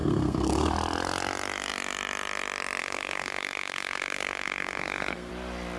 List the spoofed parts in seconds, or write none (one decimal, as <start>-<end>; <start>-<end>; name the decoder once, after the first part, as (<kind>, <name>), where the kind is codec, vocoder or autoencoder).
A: 0.0-0.7 (codec, SNAC); 2.8-5.3